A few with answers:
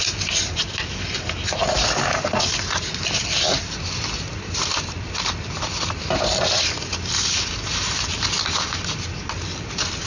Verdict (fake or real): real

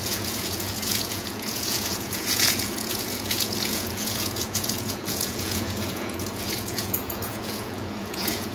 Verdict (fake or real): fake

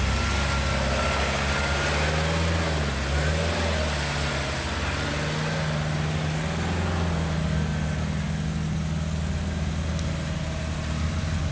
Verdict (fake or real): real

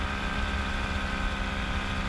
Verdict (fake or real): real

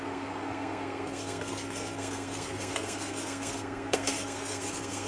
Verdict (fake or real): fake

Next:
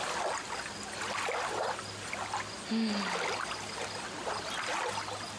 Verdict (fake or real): real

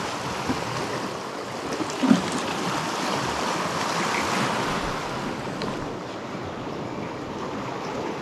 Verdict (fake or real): real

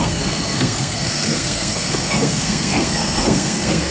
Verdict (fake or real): fake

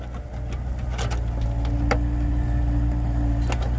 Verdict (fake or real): real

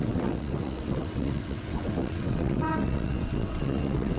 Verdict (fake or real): fake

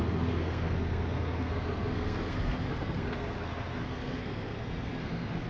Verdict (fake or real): fake